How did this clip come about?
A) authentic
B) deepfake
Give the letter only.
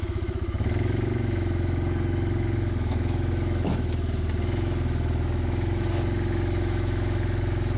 B